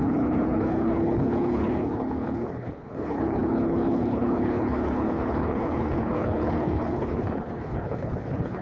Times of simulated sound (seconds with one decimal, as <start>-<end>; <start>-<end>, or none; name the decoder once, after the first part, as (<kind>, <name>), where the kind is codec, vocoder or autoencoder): 0.0-8.6 (codec, HILCodec)